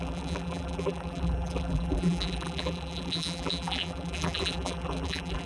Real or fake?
fake